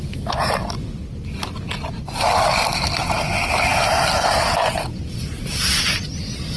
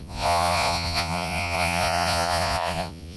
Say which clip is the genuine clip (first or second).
first